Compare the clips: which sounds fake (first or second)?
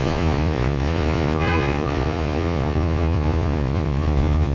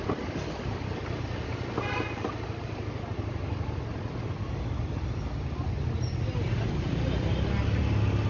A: first